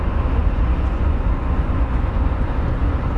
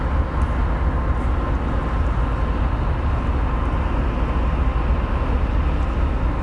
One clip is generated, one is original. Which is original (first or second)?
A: second